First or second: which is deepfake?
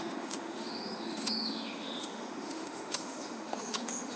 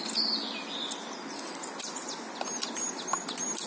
first